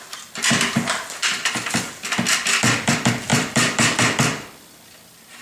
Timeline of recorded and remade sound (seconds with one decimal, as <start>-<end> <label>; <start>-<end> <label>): 0.0-3.3 recorded; 3.3-4.0 remade; 4.0-5.4 recorded